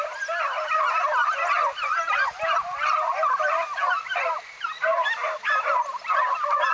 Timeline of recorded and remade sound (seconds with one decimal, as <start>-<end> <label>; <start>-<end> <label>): 0.0-6.7 recorded